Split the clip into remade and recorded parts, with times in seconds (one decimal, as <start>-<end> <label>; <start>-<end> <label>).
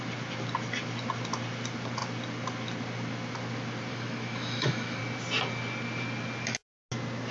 0.0-3.9 recorded; 3.9-5.0 remade; 5.0-7.3 recorded